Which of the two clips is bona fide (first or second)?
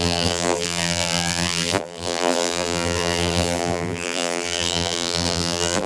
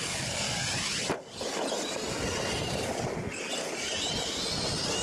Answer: second